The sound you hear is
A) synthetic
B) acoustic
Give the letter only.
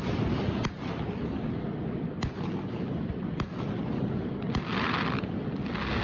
B